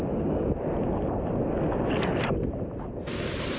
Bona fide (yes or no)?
yes